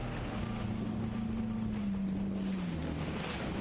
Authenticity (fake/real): real